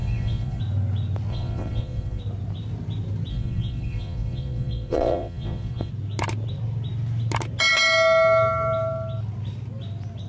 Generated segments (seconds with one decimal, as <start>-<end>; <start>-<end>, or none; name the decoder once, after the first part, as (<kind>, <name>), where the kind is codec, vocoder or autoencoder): 0.0-0.6 (vocoder, Vocos); 1.3-2.2; 3.3-5.9